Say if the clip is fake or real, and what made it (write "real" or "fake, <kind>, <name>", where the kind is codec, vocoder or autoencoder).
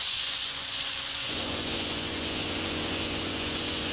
fake, vocoder, Vocos